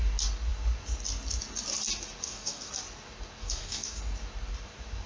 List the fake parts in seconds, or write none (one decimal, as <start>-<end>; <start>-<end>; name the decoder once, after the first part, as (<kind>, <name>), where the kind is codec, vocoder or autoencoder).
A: 2.2-2.7 (codec, DAC); 3.4-4.0